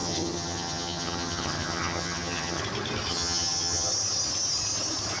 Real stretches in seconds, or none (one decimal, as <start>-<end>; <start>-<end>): 2.6-3.1; 3.9-5.2